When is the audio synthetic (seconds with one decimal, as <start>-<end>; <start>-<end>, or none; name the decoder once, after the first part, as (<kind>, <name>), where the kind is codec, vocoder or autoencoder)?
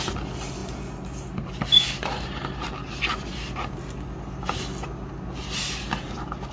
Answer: none